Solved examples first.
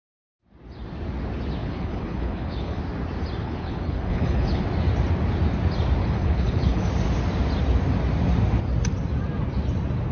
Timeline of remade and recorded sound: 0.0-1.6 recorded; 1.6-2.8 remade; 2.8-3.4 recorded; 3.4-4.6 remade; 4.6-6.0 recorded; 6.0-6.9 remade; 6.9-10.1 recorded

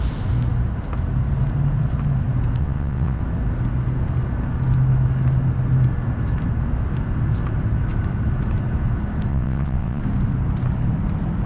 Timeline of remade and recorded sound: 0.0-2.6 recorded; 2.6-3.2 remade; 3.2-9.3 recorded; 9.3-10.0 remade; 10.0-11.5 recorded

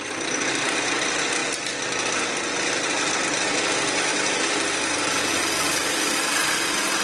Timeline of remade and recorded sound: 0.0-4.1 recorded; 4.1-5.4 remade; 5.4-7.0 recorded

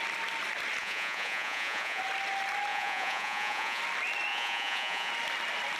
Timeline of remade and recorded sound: 0.0-0.8 recorded; 0.8-2.0 remade; 2.0-2.7 recorded; 2.7-3.8 remade; 3.8-4.3 recorded; 4.3-5.1 remade; 5.1-5.8 recorded